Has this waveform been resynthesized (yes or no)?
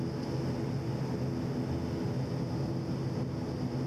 no